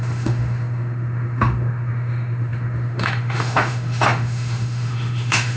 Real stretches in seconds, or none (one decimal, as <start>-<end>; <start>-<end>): none